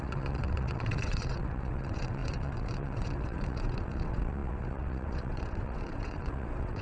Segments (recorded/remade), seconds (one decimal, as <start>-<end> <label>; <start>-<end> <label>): 0.0-6.8 remade